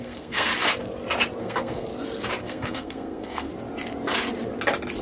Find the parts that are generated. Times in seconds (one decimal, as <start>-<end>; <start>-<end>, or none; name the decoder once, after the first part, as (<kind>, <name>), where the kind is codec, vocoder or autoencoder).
0.0-0.5 (codec, SNAC); 1.4-1.9; 2.4-3.5

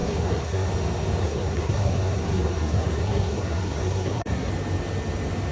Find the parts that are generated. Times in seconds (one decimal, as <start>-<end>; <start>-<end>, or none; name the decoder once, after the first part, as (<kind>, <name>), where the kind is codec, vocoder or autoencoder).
0.0-0.7 (codec, SNAC); 1.2-4.5

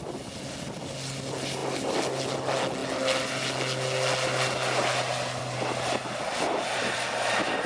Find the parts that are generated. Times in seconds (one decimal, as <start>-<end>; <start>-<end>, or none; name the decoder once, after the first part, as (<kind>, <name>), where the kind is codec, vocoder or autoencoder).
none

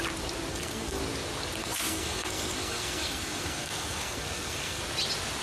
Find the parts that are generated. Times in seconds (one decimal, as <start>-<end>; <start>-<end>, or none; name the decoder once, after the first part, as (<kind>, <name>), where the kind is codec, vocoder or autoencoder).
0.5-1.0 (codec, SNAC); 1.6-4.8

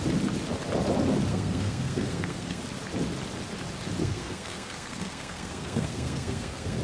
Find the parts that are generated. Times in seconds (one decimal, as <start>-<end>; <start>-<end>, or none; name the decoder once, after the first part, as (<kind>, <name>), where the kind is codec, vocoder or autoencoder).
1.3-2.6 (codec, SNAC); 4.0-6.8

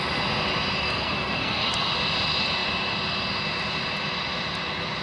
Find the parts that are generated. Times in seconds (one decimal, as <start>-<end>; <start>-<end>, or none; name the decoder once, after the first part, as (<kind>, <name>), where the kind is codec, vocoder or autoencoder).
0.8-1.9 (codec, SNAC)

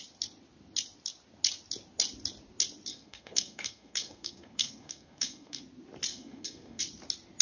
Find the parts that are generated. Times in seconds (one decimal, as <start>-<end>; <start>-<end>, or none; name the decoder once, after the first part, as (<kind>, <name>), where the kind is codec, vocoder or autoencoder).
2.9-5.6 (codec, SNAC); 6.1-6.8